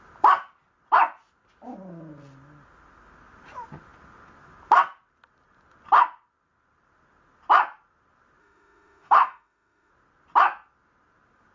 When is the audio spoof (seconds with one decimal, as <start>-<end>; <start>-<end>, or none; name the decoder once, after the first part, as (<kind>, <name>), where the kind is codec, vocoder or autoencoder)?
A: 8.4-9.9 (autoencoder, DAC-VAE)